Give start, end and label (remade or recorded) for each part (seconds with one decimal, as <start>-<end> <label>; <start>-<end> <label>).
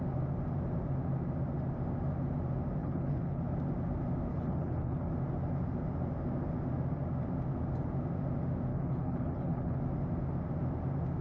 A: 0.0-2.8 recorded; 2.8-3.4 remade; 3.4-4.3 recorded; 4.3-5.1 remade; 5.1-8.7 recorded; 8.7-9.8 remade; 9.8-11.2 recorded